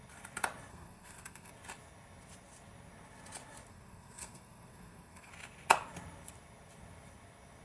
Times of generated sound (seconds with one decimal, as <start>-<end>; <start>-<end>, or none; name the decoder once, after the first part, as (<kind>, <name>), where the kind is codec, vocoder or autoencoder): 0.7-1.5 (codec, SNAC); 3.7-5.3